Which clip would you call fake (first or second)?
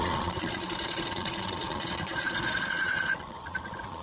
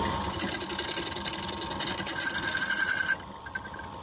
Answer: first